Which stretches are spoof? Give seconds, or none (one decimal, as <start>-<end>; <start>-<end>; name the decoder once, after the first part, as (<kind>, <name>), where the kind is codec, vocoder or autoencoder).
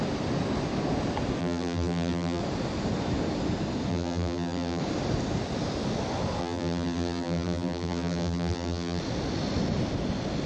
1.4-2.4 (vocoder, BigVGAN v2); 3.9-4.8; 6.4-9.0